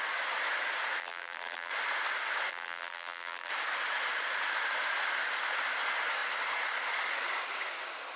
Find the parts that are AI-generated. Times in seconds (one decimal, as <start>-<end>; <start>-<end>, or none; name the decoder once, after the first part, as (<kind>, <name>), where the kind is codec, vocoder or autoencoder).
1.0-1.7 (vocoder, BigVGAN v2); 2.5-3.5